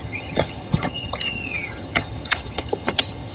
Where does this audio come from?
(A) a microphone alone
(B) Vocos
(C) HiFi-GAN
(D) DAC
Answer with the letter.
C